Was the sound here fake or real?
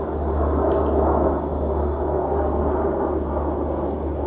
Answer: real